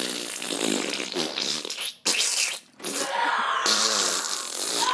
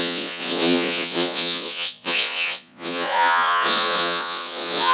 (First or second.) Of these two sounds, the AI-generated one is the second